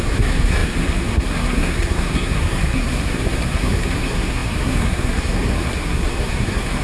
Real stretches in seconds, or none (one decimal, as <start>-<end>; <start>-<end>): none